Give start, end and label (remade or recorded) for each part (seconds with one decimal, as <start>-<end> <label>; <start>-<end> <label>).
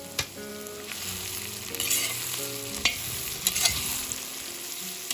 0.0-5.1 recorded